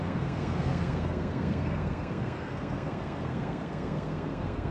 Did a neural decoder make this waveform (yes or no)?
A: yes